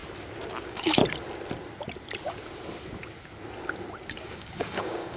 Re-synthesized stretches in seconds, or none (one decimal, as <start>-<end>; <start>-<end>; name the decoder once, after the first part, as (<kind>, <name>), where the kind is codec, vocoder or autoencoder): 0.6-1.0 (codec, DAC); 4.1-5.2